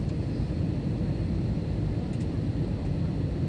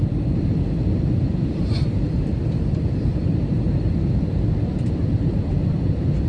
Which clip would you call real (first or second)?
first